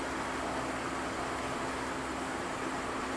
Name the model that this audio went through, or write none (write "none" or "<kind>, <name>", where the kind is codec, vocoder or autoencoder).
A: none